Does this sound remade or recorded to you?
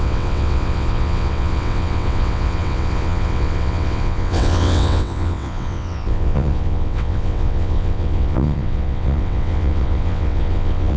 remade